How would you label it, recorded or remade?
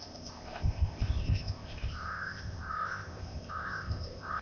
remade